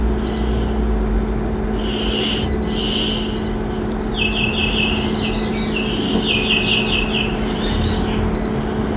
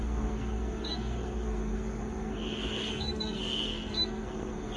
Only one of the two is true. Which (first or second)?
first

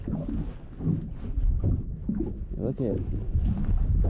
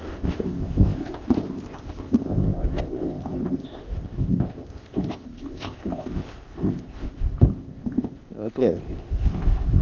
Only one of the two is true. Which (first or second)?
first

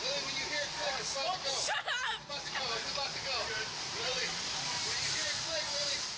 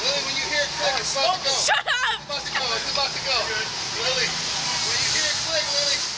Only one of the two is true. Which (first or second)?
second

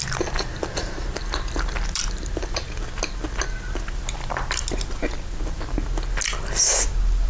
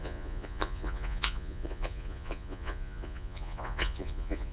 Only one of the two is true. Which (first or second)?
first